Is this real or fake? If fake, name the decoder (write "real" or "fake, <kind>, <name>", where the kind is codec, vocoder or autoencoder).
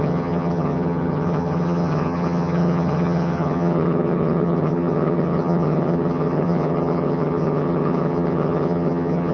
fake, vocoder, HiFi-GAN